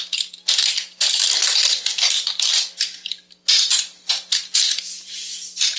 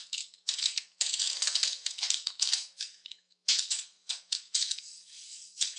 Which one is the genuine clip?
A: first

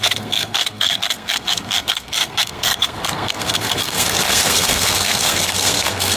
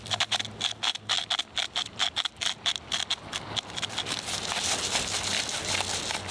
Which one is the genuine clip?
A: second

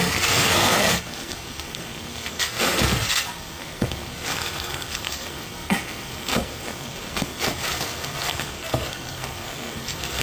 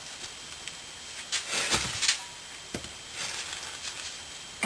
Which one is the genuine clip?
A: second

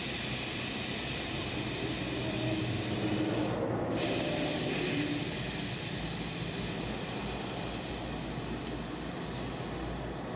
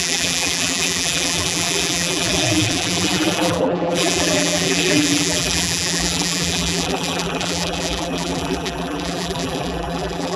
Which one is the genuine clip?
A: first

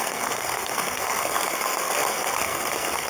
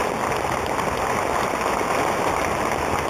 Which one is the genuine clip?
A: second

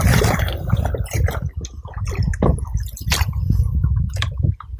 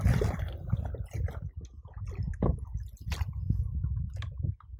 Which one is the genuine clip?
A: second